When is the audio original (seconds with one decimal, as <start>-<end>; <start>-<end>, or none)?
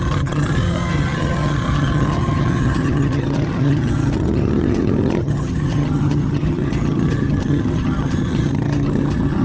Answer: none